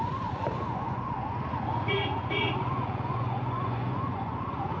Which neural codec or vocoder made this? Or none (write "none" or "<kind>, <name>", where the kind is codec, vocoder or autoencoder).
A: vocoder, Vocos